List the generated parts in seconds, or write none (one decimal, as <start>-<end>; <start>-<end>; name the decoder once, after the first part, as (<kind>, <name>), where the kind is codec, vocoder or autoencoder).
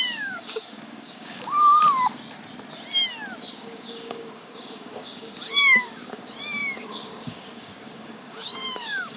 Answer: 0.0-1.8 (codec, DAC); 3.5-9.2